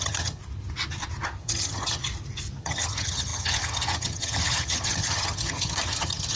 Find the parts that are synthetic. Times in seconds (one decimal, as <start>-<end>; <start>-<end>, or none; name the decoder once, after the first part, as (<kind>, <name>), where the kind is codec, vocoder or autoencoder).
0.0-0.4 (vocoder, HiFi-GAN); 1.4-2.0; 2.6-6.4